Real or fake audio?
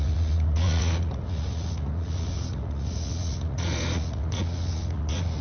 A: fake